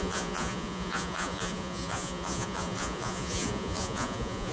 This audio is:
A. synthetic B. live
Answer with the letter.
A